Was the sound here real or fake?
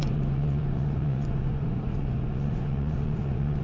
fake